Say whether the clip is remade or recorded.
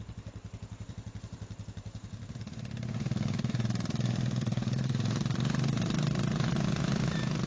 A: remade